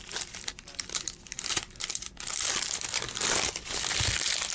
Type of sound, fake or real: fake